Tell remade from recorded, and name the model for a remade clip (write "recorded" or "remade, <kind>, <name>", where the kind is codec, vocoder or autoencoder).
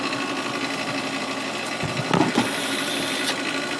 recorded